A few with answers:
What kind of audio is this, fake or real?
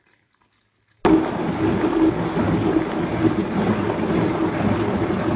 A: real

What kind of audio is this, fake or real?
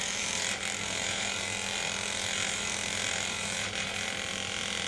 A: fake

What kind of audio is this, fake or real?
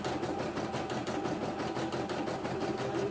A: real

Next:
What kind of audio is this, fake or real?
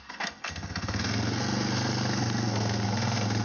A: fake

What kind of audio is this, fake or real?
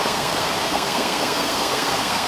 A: fake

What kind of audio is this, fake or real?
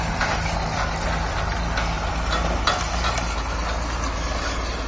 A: real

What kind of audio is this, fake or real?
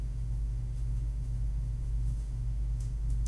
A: fake